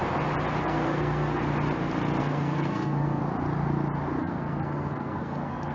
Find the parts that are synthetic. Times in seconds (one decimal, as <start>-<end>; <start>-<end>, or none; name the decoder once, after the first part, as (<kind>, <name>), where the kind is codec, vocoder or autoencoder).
0.6-1.4 (codec, SNAC); 2.2-3.2; 4.2-5.7